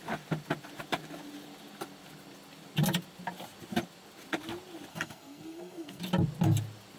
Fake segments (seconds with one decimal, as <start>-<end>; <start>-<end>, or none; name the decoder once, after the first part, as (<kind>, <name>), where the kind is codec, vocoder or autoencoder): 4.9-6.0 (codec, SNAC)